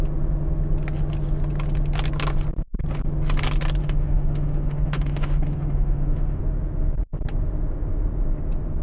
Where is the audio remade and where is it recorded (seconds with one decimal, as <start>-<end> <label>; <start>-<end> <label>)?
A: 0.0-3.8 recorded; 3.8-6.4 remade; 6.4-8.8 recorded